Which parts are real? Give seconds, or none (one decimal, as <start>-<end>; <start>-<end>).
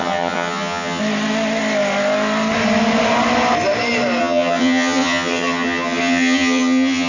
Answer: 1.0-4.2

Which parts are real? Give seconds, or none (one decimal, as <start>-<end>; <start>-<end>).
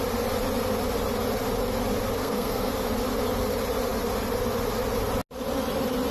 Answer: 0.0-2.2; 2.7-6.1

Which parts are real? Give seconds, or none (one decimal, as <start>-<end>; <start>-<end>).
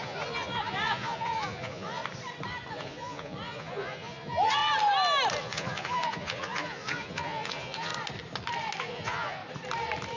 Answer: 2.0-2.7; 4.6-5.4; 7.9-8.8; 9.4-10.2